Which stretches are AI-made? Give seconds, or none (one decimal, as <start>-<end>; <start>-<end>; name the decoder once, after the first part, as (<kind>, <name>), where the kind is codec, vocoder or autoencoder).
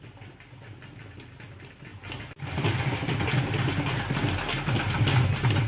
none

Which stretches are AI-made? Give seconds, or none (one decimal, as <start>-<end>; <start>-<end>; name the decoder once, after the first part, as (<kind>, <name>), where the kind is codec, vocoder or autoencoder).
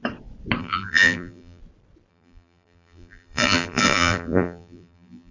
0.6-1.6 (vocoder, BigVGAN v2); 2.1-5.3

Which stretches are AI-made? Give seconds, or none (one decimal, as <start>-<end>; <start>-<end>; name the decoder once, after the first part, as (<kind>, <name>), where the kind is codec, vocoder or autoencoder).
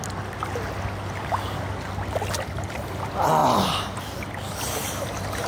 none